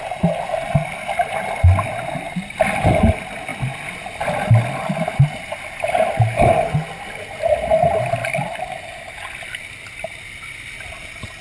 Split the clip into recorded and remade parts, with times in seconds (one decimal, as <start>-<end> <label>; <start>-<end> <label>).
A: 0.0-11.4 recorded